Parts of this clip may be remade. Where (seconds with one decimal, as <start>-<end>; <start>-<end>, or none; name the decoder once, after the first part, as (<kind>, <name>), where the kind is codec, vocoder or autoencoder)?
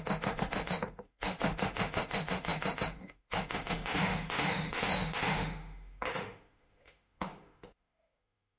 0.0-8.6 (autoencoder, DAC-VAE)